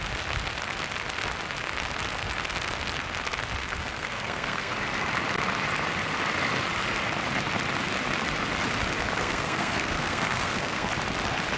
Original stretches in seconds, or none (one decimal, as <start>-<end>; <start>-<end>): 0.0-3.6; 4.7-9.2; 10.9-11.6